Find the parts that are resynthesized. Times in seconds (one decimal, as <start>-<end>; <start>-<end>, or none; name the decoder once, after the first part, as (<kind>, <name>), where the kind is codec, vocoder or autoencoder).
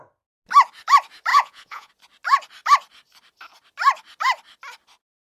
1.3-1.9 (vocoder, Vocos)